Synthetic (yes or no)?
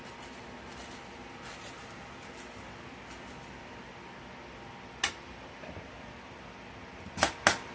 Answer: no